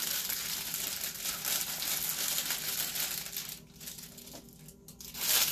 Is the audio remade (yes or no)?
no